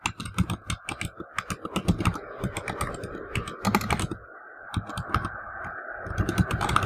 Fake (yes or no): no